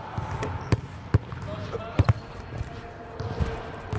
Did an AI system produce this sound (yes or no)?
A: no